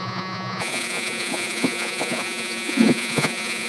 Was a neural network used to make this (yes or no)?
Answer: yes